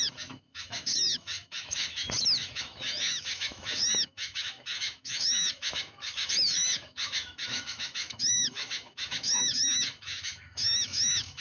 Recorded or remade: remade